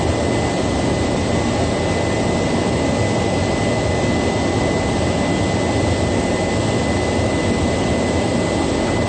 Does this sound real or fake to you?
real